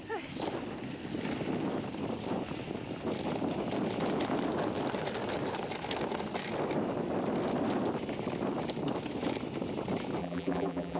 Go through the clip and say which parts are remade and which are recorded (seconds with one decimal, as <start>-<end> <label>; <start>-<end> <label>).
0.0-10.2 recorded; 10.2-11.0 remade